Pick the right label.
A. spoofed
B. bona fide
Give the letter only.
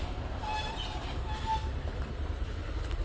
B